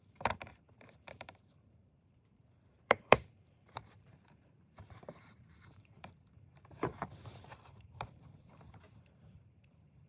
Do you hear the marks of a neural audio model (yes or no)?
yes